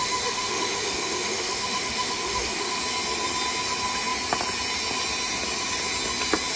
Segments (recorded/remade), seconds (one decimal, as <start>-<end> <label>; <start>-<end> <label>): 0.0-2.8 remade; 2.8-6.6 recorded